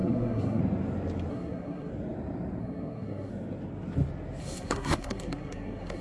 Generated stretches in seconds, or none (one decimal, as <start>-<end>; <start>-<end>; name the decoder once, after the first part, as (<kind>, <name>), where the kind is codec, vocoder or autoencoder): 0.0-0.6 (codec, SNAC); 1.3-1.9; 2.6-3.3; 4.4-6.0